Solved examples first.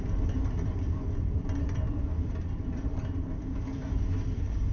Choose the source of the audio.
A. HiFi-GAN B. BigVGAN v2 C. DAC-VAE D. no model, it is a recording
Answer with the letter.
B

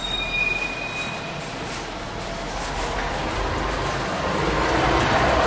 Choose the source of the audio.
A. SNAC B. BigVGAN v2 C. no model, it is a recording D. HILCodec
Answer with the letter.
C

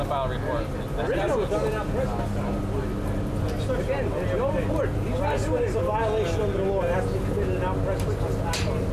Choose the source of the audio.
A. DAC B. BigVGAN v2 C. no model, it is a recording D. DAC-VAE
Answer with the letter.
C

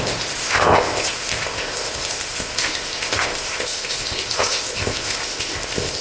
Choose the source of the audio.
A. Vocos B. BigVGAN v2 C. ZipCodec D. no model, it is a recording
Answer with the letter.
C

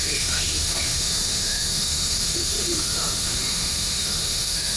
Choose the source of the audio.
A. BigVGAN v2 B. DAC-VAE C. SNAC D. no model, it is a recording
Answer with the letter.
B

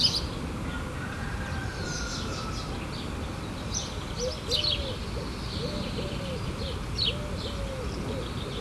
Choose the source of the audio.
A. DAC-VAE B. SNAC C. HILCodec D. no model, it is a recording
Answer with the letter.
D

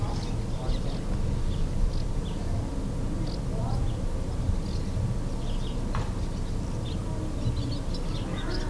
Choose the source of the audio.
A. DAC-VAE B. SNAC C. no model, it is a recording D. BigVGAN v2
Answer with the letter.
C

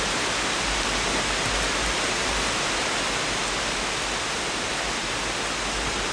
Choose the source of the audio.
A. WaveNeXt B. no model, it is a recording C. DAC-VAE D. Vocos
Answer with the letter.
B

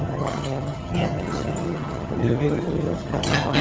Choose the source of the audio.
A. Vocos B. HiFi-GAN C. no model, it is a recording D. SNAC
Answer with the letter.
B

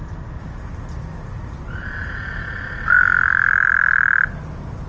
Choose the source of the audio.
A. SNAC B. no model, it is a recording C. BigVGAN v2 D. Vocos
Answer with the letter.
B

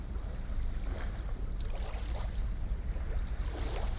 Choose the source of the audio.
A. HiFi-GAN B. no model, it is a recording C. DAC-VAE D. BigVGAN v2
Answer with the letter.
B